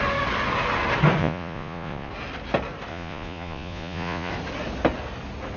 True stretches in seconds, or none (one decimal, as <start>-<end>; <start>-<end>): 0.0-1.2; 2.1-2.9; 4.3-5.6